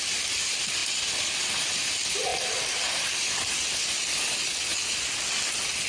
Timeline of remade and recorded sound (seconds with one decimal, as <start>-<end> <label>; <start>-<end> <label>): 0.0-5.9 recorded